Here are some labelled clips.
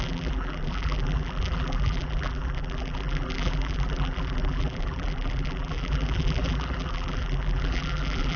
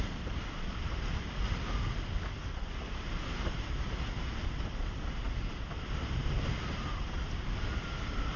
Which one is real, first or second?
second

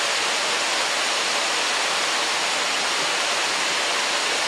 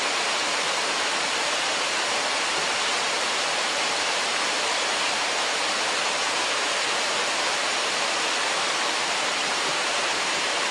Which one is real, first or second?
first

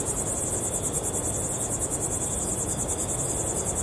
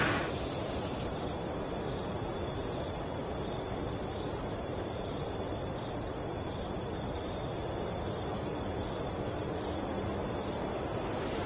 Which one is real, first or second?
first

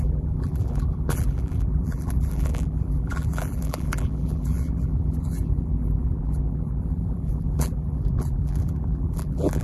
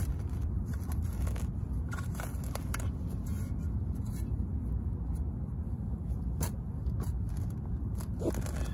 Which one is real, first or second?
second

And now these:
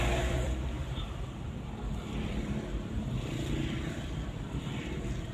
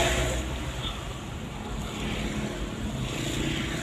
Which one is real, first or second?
second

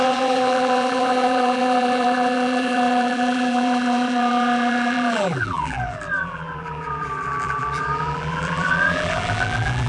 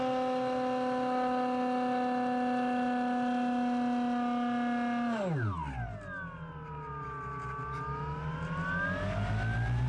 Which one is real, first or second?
second